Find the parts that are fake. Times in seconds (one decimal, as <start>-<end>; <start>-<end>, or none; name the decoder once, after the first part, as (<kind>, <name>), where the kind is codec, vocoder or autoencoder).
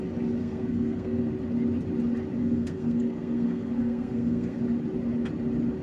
0.4-1.3 (codec, SNAC); 2.4-4.6